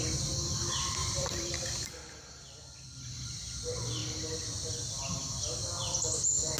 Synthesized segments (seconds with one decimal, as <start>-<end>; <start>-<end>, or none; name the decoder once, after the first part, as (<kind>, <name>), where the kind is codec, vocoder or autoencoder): 1.0-2.5 (vocoder, BigVGAN v2)